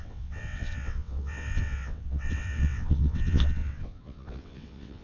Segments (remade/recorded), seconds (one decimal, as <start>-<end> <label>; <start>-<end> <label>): 0.0-5.0 remade